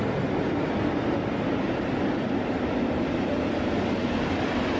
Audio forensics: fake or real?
real